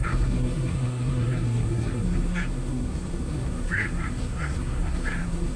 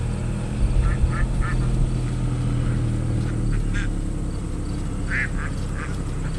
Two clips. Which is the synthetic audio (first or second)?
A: first